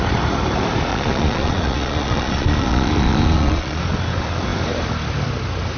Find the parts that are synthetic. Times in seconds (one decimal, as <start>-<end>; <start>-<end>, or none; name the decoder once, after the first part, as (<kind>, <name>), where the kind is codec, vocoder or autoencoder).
0.9-3.8 (vocoder, Vocos)